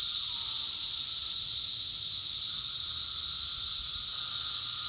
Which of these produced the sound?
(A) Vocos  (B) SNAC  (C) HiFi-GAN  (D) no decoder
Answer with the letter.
D